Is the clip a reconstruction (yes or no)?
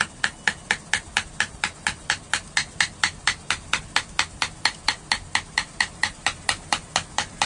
no